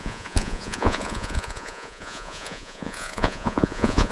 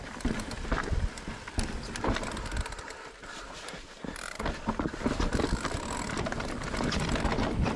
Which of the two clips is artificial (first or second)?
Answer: first